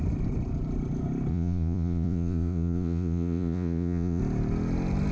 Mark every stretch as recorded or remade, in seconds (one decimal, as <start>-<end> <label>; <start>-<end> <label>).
0.0-1.3 recorded; 1.3-4.2 remade; 4.2-5.1 recorded